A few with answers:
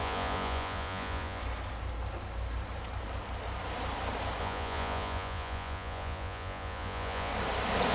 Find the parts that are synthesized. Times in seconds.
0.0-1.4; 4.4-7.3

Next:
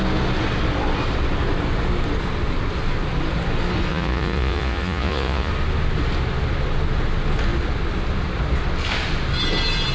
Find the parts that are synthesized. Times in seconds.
3.9-5.5

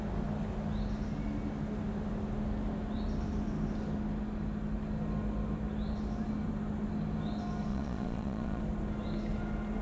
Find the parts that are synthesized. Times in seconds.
7.7-8.6

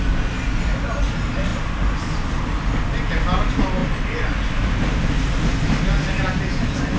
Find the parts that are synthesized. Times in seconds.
none

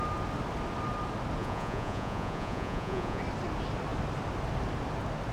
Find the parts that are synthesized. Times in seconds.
1.4-3.2

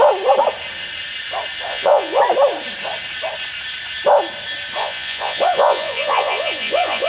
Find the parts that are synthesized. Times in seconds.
1.7-2.2; 4.8-7.1

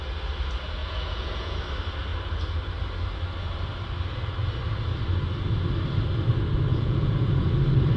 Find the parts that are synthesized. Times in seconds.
0.8-1.6; 6.7-7.5

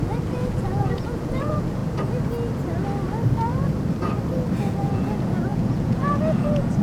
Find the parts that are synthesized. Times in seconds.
0.0-1.8; 4.6-6.8